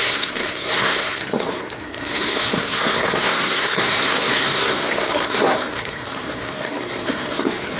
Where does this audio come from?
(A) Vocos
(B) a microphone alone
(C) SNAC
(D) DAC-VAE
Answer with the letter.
C